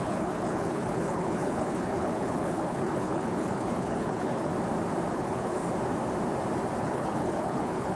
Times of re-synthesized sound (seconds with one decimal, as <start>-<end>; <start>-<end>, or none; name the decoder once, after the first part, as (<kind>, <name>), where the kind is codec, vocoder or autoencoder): 0.0-4.5 (codec, HILCodec); 5.1-5.6; 6.8-7.9